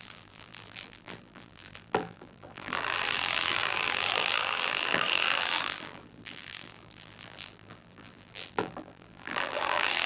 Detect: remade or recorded remade